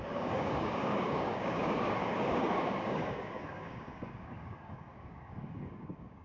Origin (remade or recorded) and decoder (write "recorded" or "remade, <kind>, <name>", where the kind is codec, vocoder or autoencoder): remade, codec, DAC